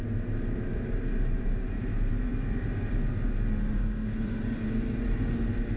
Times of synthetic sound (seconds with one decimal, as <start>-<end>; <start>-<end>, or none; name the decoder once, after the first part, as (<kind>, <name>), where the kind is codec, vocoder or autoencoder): 0.0-5.8 (vocoder, BigVGAN v2)